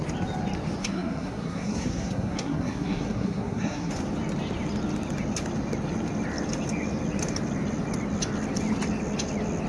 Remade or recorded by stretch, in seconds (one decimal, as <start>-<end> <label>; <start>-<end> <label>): 0.0-0.8 recorded; 0.8-3.9 remade; 3.9-9.7 recorded